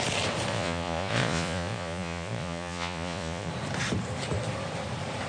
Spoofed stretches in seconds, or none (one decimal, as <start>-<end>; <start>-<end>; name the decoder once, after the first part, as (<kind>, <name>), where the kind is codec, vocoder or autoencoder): 0.5-3.5 (vocoder, Vocos)